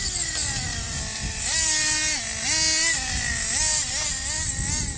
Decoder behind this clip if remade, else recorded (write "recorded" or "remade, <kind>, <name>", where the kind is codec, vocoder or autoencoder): recorded